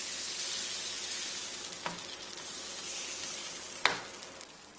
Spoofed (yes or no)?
no